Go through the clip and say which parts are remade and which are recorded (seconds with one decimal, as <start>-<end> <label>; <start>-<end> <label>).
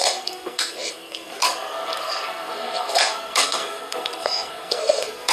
0.0-5.3 remade